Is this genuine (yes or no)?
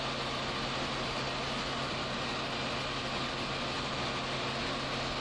yes